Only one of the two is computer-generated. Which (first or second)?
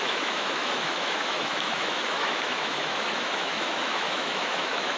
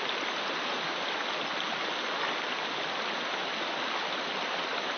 first